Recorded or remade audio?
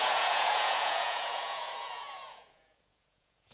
remade